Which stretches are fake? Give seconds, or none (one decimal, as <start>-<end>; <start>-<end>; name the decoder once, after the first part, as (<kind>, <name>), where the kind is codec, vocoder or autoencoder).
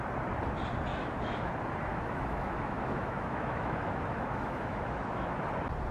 0.9-1.5 (autoencoder, DAC-VAE); 1.9-5.4